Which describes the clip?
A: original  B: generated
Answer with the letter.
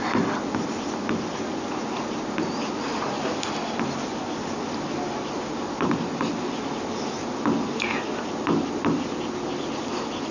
A